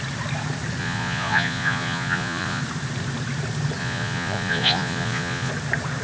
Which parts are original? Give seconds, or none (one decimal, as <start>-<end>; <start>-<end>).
0.0-0.8; 2.6-3.8; 5.5-6.0